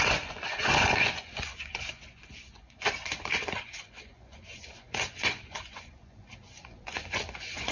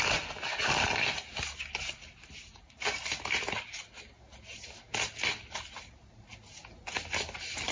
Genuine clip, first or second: second